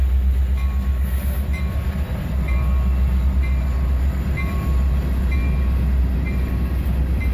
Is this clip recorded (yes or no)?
yes